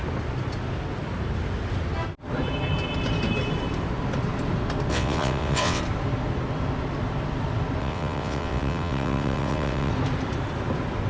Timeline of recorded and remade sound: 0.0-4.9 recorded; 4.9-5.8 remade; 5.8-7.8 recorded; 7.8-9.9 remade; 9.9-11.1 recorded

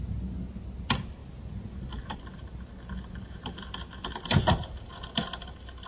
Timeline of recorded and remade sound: 0.0-5.9 recorded

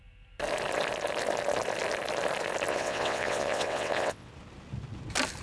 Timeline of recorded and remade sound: 0.0-2.7 recorded; 2.7-4.3 remade; 4.3-5.4 recorded

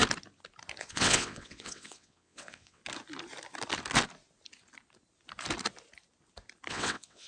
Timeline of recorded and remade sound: 0.0-0.8 recorded; 0.8-2.8 remade; 2.8-6.7 recorded; 6.7-7.3 remade